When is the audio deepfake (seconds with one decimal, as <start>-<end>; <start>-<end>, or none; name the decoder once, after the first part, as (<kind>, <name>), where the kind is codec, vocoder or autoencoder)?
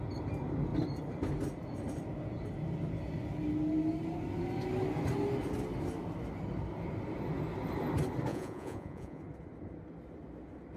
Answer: 8.3-9.2 (vocoder, Vocos)